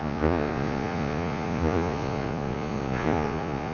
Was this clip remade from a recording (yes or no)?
yes